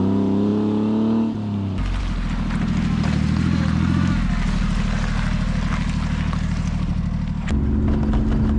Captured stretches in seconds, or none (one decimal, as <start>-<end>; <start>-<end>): 0.0-8.6